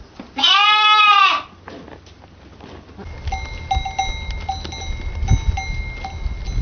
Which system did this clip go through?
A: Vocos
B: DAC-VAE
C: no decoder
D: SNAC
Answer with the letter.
C